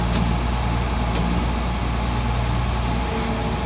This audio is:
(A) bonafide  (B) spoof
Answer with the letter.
A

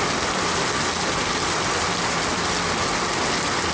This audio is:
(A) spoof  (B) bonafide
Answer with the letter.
B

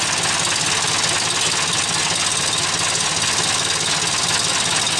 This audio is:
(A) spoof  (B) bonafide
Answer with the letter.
B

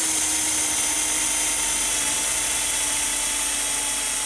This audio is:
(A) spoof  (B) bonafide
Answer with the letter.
B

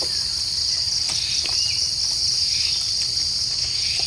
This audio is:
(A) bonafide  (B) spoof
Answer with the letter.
A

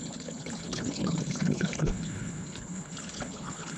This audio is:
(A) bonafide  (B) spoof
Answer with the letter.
B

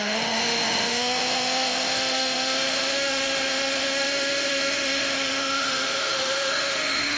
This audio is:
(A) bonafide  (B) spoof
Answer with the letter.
B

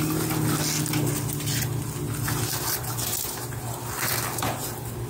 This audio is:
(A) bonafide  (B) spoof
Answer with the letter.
A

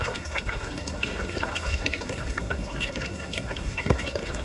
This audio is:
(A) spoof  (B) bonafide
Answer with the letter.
A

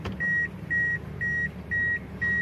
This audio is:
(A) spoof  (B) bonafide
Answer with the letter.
B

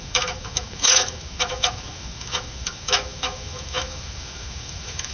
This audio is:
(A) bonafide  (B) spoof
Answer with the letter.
B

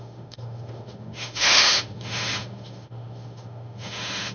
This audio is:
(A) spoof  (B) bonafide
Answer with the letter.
A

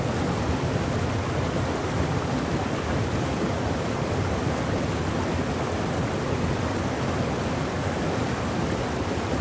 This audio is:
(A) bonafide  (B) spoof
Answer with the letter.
A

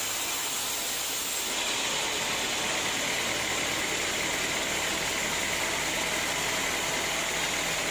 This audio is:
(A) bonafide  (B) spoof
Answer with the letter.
A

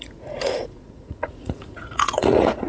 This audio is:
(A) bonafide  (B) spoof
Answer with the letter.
B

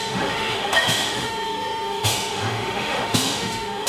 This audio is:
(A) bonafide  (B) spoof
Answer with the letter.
B